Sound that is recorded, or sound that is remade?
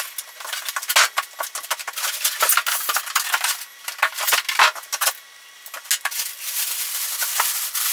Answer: recorded